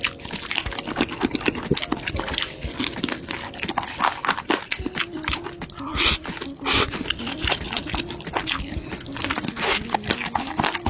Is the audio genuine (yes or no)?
yes